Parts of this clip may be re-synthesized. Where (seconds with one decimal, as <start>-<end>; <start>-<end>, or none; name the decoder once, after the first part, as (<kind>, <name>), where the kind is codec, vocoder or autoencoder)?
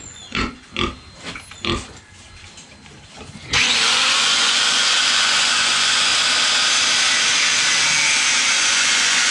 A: 0.0-0.7 (vocoder, Vocos); 3.3-6.1; 8.3-9.3